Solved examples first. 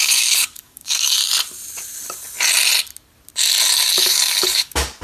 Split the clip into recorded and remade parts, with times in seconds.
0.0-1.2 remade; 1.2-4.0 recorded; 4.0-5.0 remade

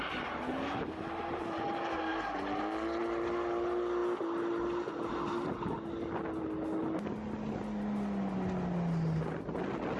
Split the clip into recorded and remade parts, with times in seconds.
0.0-10.0 recorded